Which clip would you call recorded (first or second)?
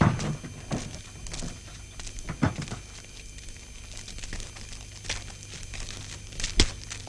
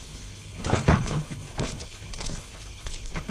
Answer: first